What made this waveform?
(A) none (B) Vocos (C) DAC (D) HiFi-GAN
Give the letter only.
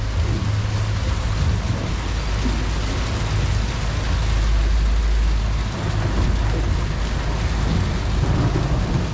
A